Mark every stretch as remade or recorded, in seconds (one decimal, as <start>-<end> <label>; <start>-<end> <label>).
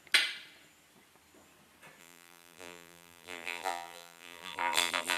0.0-2.0 recorded; 2.0-5.2 remade